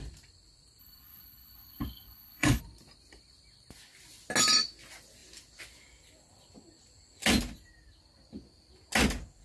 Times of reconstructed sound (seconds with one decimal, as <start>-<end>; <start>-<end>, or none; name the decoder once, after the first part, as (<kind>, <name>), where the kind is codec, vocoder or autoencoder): 0.8-2.6 (codec, HILCodec)